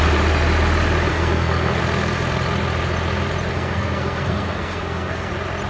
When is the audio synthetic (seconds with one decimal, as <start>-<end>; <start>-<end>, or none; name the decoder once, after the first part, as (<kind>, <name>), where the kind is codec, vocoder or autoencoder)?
1.1-1.8 (codec, SNAC); 3.5-5.3